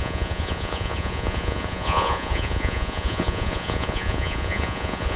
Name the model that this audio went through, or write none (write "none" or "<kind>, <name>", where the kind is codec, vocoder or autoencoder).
vocoder, Vocos